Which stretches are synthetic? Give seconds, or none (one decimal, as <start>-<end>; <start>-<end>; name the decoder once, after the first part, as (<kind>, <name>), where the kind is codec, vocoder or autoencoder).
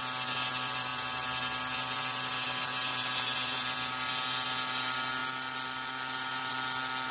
none